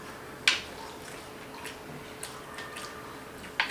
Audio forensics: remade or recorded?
recorded